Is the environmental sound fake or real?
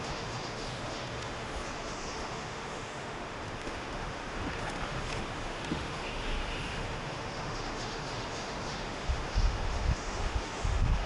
fake